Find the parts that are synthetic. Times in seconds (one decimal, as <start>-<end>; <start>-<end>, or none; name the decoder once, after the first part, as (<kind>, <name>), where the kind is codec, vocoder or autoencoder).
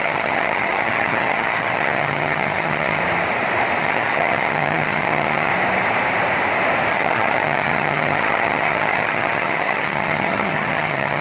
0.0-3.0 (vocoder, HiFi-GAN); 3.8-5.5; 6.9-11.2